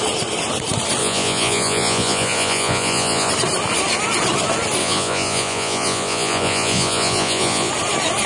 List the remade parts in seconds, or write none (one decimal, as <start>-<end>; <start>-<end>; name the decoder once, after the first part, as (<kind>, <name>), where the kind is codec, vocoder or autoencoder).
1.0-3.3 (vocoder, Vocos); 4.8-7.7